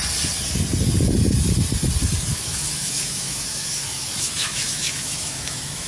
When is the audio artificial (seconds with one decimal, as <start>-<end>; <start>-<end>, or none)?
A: 2.3-5.9